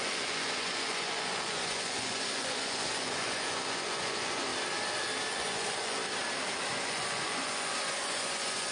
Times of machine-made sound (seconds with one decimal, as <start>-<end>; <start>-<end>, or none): 0.0-4.5; 5.3-6.0; 6.8-8.7